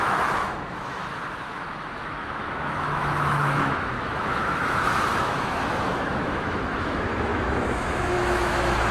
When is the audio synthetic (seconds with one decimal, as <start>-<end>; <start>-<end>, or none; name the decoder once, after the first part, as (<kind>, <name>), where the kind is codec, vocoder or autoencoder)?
0.0-8.9 (autoencoder, DAC-VAE)